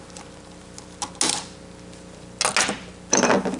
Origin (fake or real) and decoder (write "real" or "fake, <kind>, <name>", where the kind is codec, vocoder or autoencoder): real